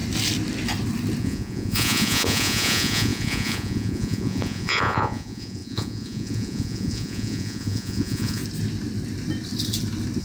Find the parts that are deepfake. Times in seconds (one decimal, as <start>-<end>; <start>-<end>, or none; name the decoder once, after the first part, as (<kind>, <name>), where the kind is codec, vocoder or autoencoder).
1.2-8.4 (vocoder, Vocos)